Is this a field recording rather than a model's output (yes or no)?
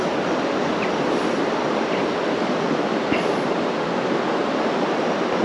yes